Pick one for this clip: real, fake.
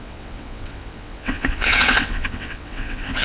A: fake